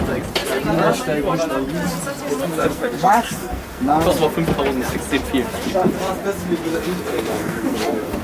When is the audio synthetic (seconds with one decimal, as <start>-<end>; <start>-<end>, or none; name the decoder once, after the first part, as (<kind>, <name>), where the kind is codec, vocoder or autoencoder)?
2.4-3.9 (codec, SNAC); 6.7-8.2